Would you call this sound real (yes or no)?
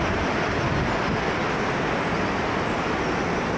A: yes